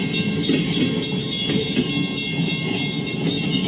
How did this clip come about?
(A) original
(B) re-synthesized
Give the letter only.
A